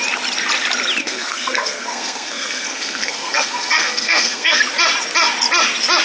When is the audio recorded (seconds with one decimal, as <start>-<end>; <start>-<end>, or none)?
0.0-1.0; 4.6-6.0